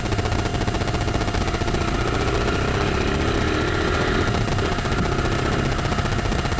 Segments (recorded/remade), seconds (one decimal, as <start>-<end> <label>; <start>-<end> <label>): 0.0-6.6 recorded